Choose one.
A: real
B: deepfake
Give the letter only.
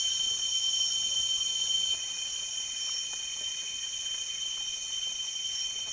B